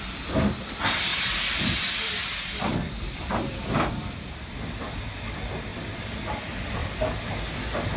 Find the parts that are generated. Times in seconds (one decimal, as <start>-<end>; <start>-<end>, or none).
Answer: 1.1-5.0; 6.8-7.3